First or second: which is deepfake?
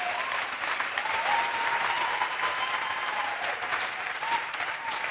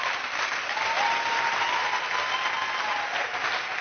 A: first